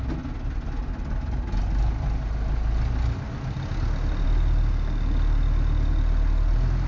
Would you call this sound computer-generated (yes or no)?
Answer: no